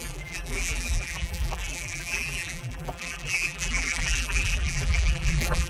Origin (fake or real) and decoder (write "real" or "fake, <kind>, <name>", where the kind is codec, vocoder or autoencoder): fake, vocoder, BigVGAN v2